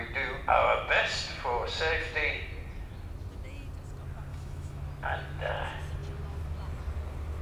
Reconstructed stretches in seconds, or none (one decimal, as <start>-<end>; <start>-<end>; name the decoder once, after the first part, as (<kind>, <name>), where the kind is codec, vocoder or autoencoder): 4.3-4.8 (autoencoder, DAC-VAE)